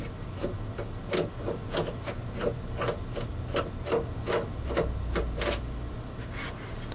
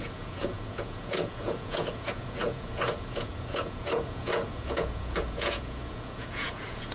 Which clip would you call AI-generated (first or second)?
second